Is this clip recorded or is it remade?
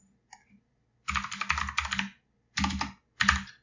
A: recorded